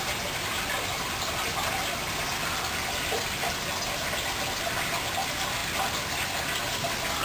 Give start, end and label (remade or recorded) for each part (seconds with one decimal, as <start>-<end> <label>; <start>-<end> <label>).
0.0-7.2 recorded